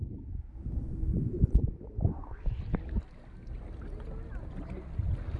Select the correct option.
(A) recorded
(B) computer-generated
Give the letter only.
A